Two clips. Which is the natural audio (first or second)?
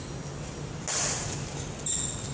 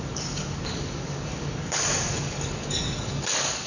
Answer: first